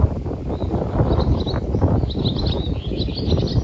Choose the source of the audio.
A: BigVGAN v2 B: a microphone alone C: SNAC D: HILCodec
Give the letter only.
B